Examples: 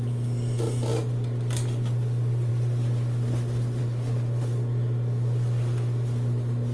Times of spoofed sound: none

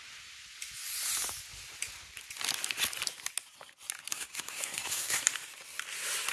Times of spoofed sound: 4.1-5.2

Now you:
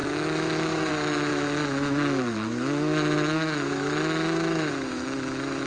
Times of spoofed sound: 0.0-5.7